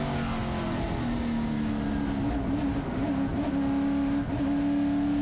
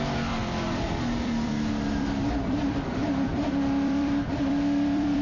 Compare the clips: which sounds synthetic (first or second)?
second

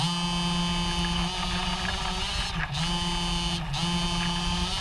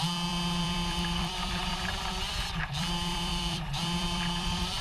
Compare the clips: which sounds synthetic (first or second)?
second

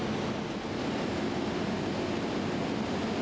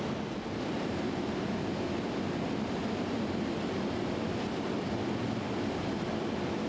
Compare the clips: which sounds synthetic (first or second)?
second